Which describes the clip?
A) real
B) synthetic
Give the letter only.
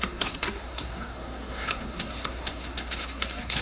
B